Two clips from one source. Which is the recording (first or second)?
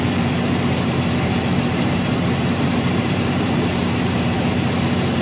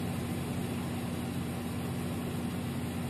second